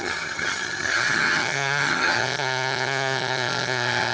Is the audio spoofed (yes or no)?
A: yes